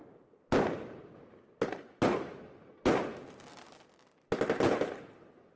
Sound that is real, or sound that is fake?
real